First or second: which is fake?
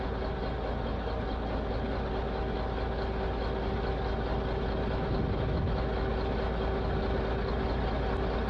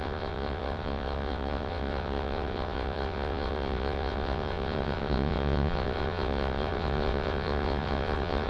second